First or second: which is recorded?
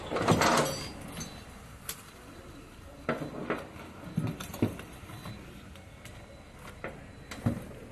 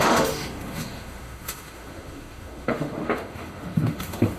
first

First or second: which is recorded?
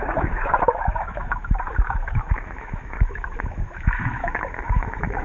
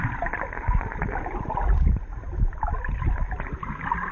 second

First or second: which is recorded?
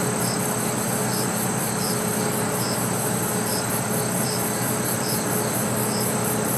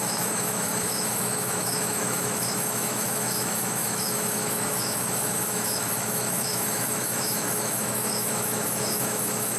first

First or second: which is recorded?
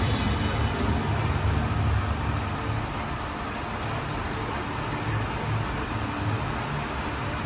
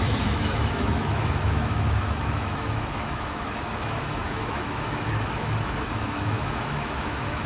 first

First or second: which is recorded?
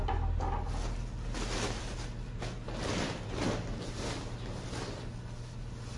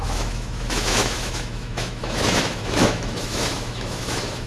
first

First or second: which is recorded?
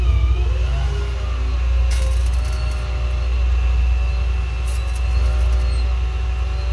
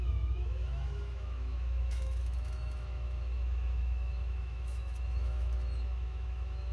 first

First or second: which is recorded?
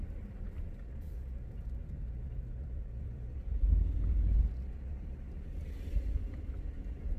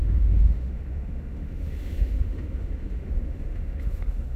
first